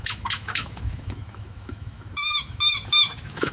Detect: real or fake fake